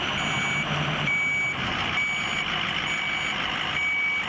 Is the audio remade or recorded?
recorded